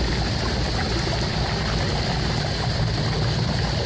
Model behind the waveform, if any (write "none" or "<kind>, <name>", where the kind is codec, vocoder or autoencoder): none